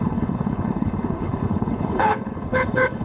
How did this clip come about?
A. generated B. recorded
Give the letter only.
A